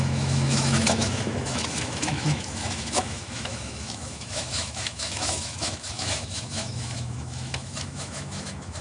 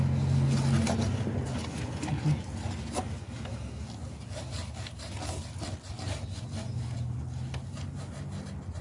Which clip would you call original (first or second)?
second